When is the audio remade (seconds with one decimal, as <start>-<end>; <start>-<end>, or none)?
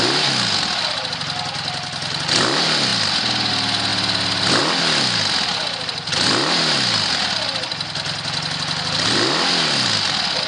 none